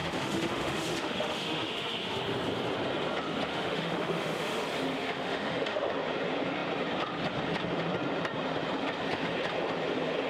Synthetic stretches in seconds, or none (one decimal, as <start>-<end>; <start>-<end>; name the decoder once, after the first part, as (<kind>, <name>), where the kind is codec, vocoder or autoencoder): 0.0-2.2 (autoencoder, DAC-VAE); 3.5-4.6; 5.0-5.9